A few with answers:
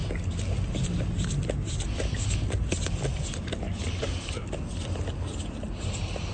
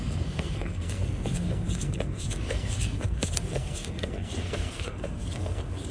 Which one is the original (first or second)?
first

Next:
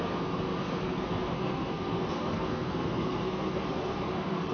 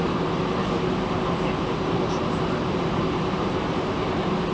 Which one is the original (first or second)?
second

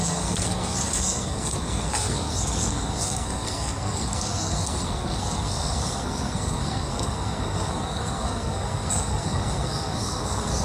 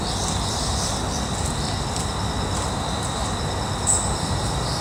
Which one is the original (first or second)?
second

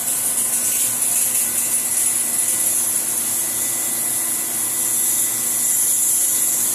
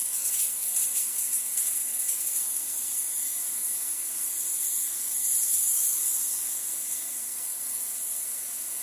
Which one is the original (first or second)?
first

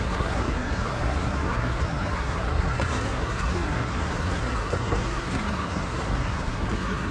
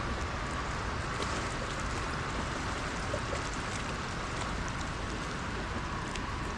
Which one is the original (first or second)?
second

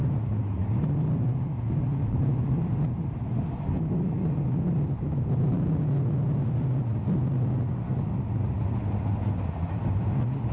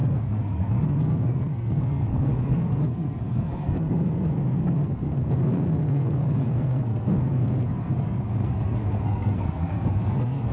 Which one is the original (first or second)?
first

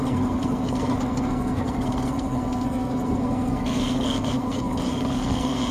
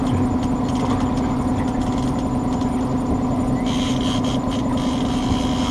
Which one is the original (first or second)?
second